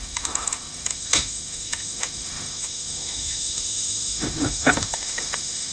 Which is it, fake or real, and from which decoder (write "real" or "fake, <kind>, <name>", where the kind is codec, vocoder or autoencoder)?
fake, autoencoder, DAC-VAE